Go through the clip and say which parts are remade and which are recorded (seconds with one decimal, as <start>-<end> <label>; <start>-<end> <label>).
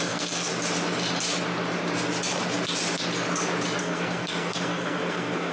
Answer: 0.0-0.5 remade; 0.5-3.8 recorded; 3.8-5.5 remade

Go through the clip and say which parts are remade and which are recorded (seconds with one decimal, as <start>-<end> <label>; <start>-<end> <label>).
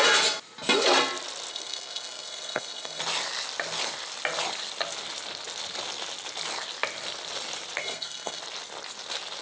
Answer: 0.0-1.5 recorded; 1.5-3.0 remade; 3.0-7.8 recorded; 7.8-8.4 remade; 8.4-9.4 recorded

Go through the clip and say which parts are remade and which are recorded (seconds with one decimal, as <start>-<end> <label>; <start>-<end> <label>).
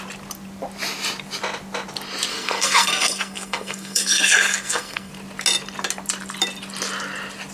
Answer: 0.0-2.3 recorded; 2.3-5.1 remade; 5.1-7.5 recorded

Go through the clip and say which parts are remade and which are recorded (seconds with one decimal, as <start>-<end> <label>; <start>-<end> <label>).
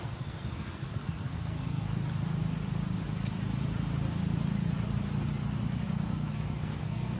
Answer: 0.0-2.0 remade; 2.0-5.9 recorded; 5.9-7.2 remade